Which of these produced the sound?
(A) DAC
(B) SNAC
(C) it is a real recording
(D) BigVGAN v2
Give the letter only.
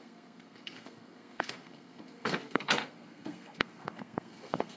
B